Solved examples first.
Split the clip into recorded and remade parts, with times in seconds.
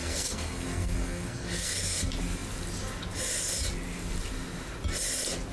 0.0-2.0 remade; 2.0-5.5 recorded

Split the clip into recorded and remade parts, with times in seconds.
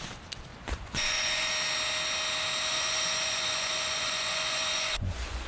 0.0-0.5 recorded; 0.5-1.5 remade; 1.5-2.7 recorded; 2.7-5.5 remade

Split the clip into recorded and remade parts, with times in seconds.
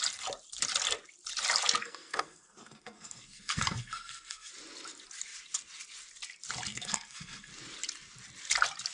0.0-1.8 recorded; 1.8-4.5 remade; 4.5-6.7 recorded; 6.7-7.5 remade; 7.5-8.9 recorded